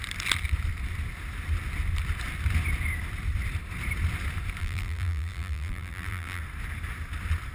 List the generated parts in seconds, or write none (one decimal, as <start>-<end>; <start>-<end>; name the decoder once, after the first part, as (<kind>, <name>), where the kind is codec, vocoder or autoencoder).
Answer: 4.6-6.4 (vocoder, BigVGAN v2)